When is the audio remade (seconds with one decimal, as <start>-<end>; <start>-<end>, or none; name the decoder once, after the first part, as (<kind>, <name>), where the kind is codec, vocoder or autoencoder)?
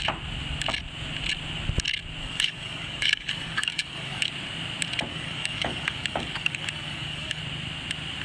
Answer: 2.2-4.2 (codec, DAC); 5.1-7.4